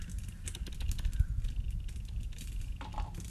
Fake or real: real